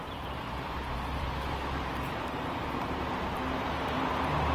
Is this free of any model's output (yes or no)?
no